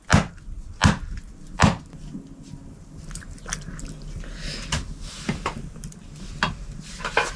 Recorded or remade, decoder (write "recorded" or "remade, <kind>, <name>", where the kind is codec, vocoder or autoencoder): recorded